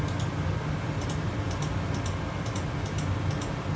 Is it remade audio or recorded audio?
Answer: recorded